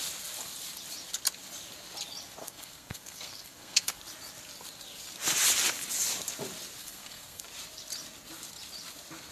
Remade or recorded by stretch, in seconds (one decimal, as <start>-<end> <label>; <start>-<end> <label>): 0.0-2.4 recorded; 2.4-4.0 remade; 4.0-6.8 recorded; 6.8-7.4 remade; 7.4-9.3 recorded

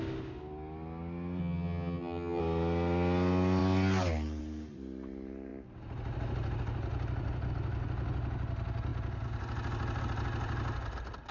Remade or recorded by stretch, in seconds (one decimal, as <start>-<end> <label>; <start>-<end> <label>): 0.0-1.4 recorded; 1.4-2.4 remade; 2.4-11.3 recorded

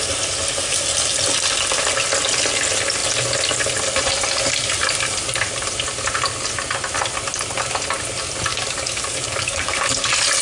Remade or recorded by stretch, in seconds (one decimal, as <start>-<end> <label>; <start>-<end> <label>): 0.0-8.5 recorded; 8.5-9.9 remade; 9.9-10.4 recorded